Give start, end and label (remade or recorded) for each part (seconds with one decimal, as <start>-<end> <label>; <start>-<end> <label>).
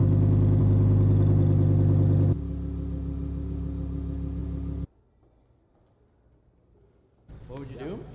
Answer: 0.0-8.1 recorded